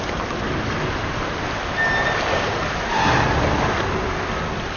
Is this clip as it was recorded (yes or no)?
yes